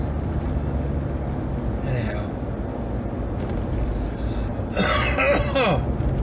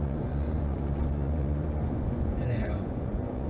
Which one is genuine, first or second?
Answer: first